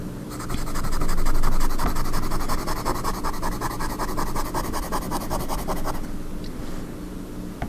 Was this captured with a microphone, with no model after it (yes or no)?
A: yes